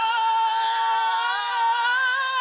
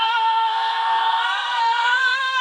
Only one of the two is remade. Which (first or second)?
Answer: second